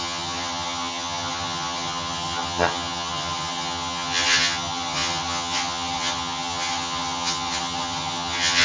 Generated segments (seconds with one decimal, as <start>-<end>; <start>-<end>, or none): 0.0-8.6

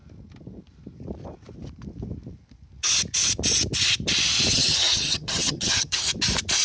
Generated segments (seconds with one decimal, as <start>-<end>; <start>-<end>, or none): 4.5-6.0

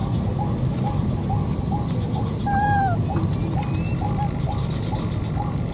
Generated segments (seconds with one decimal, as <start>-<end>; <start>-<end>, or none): none

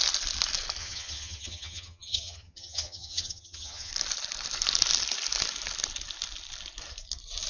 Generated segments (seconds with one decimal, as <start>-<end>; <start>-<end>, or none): 0.8-3.9

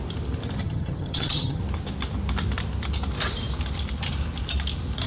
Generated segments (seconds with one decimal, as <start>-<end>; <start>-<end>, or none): 0.6-1.6

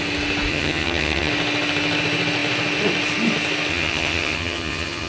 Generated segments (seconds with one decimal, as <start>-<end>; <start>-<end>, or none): 0.5-1.3; 3.7-5.1

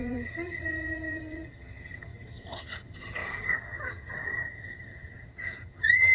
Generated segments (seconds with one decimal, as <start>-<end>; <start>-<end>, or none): 0.0-6.1